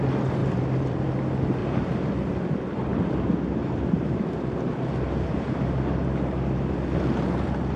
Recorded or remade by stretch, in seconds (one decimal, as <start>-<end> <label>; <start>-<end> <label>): 0.0-0.4 recorded; 0.4-1.1 remade; 1.1-1.6 recorded; 1.6-2.1 remade; 2.1-7.8 recorded